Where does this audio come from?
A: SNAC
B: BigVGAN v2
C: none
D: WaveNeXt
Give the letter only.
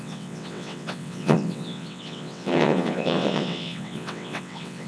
D